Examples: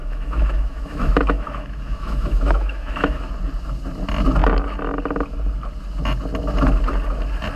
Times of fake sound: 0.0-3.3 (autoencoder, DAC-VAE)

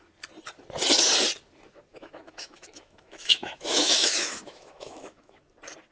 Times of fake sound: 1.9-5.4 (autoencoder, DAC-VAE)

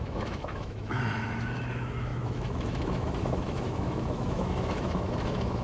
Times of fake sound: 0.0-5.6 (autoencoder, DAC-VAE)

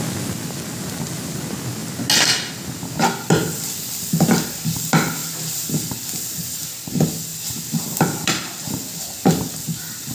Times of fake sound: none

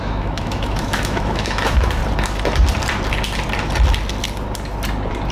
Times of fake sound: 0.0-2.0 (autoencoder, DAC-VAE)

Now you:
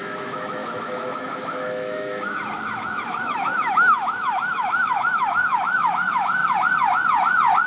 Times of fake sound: 0.0-6.4 (autoencoder, DAC-VAE)